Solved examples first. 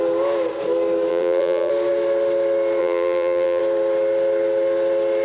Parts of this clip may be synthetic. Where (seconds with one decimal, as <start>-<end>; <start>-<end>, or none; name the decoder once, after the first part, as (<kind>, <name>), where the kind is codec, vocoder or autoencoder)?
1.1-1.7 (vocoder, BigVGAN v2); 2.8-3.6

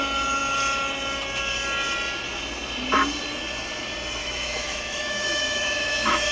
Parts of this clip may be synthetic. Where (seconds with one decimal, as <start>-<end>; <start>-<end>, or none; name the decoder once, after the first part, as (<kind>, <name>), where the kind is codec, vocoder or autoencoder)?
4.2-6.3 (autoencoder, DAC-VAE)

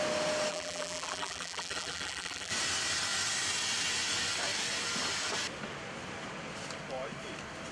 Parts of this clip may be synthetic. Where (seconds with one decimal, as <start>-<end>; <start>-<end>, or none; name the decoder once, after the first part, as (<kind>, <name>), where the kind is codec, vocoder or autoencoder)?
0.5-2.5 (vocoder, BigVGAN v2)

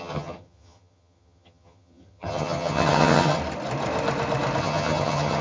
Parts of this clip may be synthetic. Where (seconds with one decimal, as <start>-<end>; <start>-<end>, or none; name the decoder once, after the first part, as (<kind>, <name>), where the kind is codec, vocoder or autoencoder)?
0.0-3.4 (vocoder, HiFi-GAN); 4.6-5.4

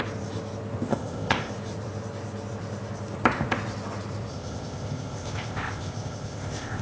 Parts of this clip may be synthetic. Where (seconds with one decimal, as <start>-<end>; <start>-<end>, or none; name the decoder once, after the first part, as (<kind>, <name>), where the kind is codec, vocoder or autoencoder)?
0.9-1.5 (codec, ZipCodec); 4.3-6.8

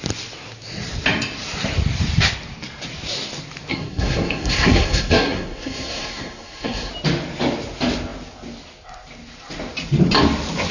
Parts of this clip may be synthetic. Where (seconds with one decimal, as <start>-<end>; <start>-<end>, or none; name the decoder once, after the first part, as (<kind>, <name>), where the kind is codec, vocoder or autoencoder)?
3.7-6.9 (codec, SNAC)